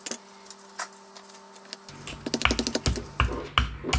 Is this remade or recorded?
recorded